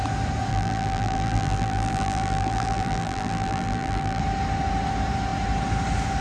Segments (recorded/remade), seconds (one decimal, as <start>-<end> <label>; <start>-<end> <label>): 0.0-0.5 recorded; 0.5-4.2 remade; 4.2-6.2 recorded